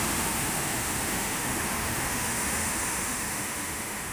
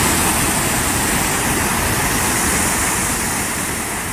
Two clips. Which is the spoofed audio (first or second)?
first